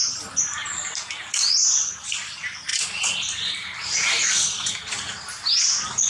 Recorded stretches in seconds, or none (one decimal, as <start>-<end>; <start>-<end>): 0.0-6.1